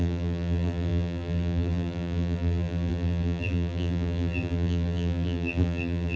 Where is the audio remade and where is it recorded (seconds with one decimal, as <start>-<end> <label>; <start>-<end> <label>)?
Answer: 0.0-6.2 remade